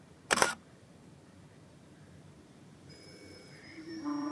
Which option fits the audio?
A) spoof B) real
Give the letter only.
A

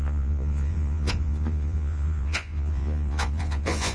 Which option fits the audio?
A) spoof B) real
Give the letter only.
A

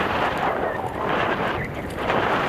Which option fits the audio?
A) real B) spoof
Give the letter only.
B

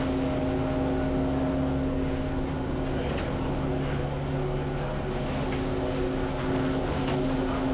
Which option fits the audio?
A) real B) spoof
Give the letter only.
A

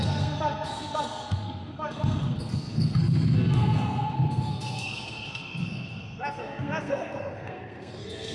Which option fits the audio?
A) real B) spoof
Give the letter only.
B